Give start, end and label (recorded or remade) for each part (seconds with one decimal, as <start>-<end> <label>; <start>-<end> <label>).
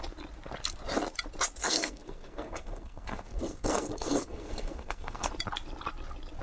0.0-1.6 recorded; 1.6-5.3 remade; 5.3-6.4 recorded